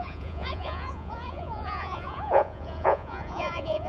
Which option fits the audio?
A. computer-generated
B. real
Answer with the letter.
A